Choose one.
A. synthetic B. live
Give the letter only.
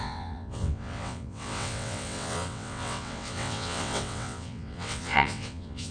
A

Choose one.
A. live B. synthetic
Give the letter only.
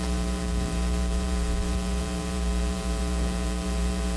B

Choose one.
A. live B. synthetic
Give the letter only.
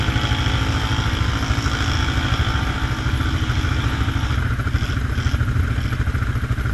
A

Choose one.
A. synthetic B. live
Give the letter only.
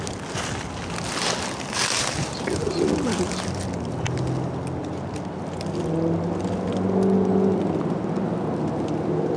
B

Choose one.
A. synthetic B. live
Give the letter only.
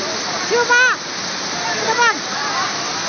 B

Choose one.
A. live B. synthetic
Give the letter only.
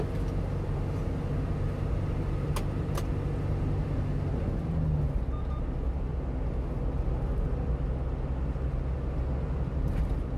A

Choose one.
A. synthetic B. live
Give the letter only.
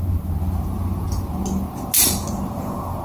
B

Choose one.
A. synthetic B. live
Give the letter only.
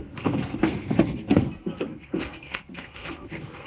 A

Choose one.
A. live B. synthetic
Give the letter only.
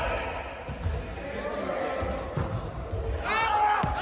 A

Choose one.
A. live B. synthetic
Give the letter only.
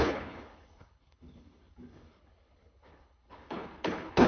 B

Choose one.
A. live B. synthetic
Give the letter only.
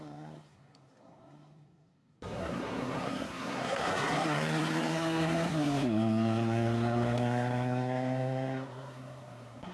B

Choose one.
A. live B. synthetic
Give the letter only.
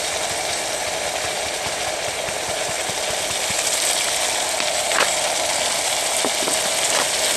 A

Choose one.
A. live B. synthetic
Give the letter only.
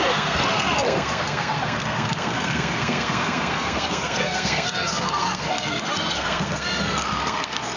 B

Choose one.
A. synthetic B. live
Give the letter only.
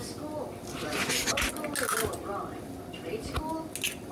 B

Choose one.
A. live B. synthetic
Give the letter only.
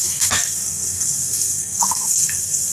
B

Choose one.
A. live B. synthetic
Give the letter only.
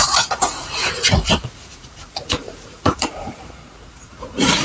B